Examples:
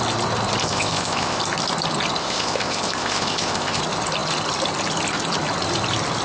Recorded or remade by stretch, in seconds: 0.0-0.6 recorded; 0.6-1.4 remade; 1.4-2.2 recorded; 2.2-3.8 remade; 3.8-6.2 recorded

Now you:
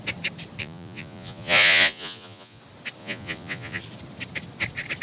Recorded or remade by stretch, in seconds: 0.0-0.6 recorded; 0.6-2.6 remade; 2.6-3.0 recorded; 3.0-3.8 remade; 3.8-5.0 recorded

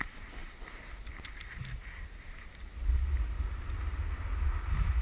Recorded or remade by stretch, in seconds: 0.0-5.0 recorded

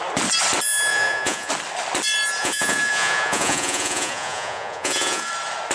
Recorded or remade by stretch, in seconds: 0.0-0.9 recorded; 0.9-1.5 remade; 1.5-2.4 recorded; 2.4-5.3 remade; 5.3-5.7 recorded

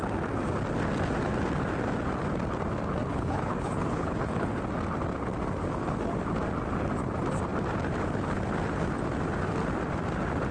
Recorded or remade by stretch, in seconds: 0.0-3.1 recorded; 3.1-4.6 remade; 4.6-10.5 recorded

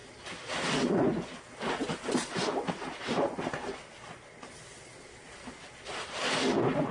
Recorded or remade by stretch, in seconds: 0.0-6.9 recorded

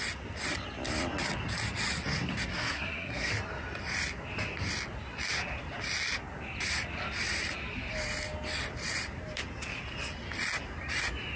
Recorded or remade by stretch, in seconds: 0.0-2.5 recorded; 2.5-3.3 remade; 3.3-11.4 recorded

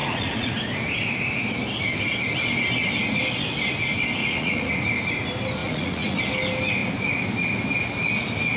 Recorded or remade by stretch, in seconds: 0.0-0.5 remade; 0.5-4.2 recorded; 4.2-4.7 remade; 4.7-5.6 recorded; 5.6-6.2 remade; 6.2-8.6 recorded